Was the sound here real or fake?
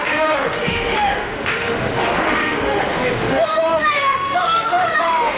fake